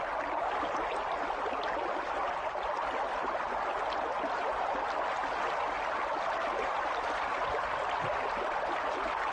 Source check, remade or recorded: recorded